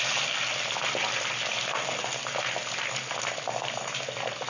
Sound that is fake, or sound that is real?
real